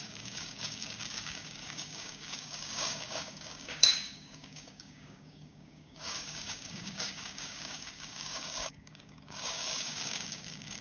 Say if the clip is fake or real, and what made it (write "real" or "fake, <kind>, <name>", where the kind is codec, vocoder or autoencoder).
fake, codec, DAC